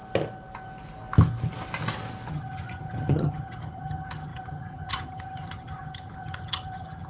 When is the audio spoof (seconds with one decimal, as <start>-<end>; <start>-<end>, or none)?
2.3-7.1